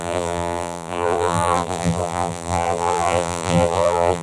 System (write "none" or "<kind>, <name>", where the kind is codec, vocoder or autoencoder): vocoder, BigVGAN v2